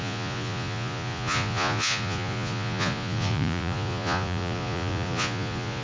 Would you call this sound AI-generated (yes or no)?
yes